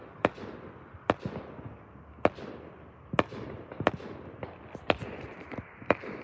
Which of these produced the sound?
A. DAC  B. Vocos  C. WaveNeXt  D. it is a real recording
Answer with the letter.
D